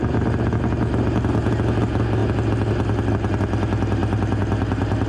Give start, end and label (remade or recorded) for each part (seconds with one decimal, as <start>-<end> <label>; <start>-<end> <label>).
0.0-5.1 recorded

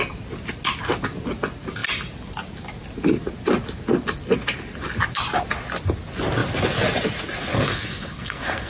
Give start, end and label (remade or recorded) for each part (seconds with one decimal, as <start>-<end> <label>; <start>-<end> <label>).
0.0-7.5 recorded; 7.5-8.7 remade

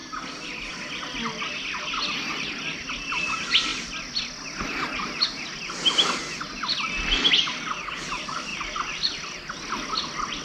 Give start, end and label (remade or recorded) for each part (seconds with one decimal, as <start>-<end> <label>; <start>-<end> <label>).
0.0-10.4 recorded

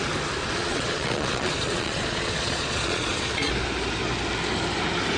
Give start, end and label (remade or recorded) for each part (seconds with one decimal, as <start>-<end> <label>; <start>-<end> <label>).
0.0-0.4 recorded; 0.4-3.5 remade; 3.5-5.2 recorded

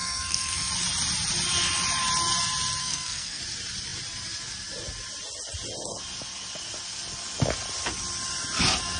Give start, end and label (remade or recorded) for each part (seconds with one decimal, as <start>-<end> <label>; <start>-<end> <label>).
0.0-0.7 remade; 0.7-2.8 recorded; 2.8-3.4 remade; 3.4-9.0 recorded

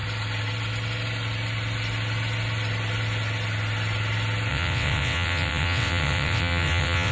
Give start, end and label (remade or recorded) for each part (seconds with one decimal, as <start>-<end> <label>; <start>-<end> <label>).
0.0-4.5 recorded; 4.5-7.1 remade